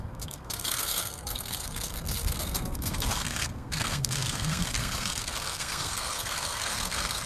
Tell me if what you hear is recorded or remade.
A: remade